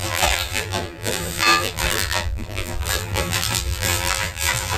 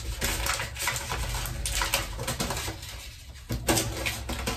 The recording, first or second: second